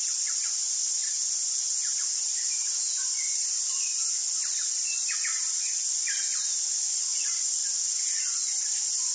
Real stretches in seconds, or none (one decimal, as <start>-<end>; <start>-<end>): 0.0-9.1